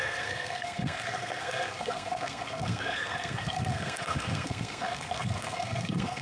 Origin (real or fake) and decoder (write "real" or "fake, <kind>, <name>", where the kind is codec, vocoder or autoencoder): fake, codec, SNAC